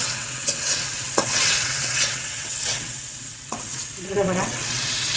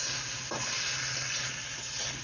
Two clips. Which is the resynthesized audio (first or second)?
first